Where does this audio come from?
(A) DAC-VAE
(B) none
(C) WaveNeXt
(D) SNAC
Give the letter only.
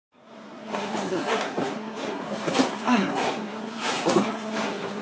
D